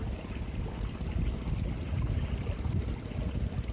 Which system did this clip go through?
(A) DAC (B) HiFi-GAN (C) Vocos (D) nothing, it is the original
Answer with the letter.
D